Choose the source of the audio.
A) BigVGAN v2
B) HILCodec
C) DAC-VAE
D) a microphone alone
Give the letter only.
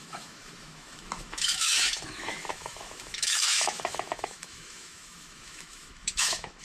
C